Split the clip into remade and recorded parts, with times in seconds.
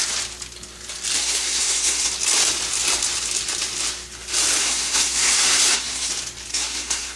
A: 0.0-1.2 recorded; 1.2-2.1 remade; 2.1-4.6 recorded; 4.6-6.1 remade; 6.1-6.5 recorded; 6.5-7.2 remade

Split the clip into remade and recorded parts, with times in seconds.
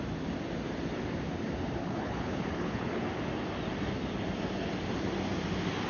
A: 0.0-1.8 recorded; 1.8-3.0 remade; 3.0-5.9 recorded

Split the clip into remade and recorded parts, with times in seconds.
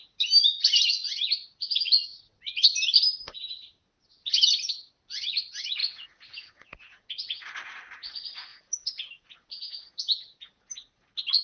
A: 0.0-5.8 recorded; 5.8-7.1 remade; 7.1-8.5 recorded; 8.5-10.6 remade; 10.6-11.4 recorded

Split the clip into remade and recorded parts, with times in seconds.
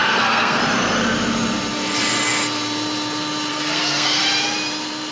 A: 0.0-0.6 remade; 0.6-3.5 recorded; 3.5-4.2 remade; 4.2-5.1 recorded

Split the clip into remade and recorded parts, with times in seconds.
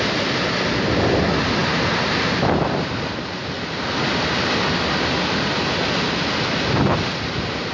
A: 0.0-7.7 recorded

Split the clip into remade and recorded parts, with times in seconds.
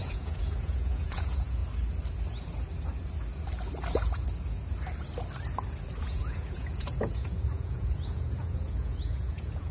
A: 0.0-1.6 remade; 1.6-6.0 recorded; 6.0-9.7 remade